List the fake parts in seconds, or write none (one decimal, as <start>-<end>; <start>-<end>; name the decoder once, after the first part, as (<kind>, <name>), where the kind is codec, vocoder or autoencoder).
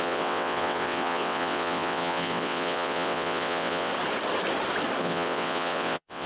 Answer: 0.0-3.9 (vocoder, WaveNeXt); 5.0-6.3